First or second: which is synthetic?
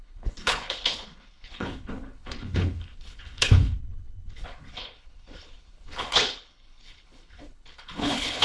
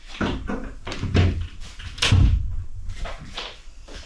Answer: first